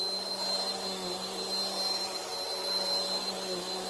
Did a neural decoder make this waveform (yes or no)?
no